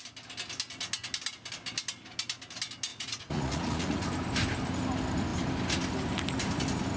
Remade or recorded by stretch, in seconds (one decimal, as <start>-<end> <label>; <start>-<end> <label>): 0.0-2.9 recorded; 2.9-4.0 remade; 4.0-7.0 recorded